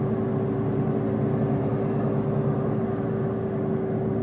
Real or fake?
real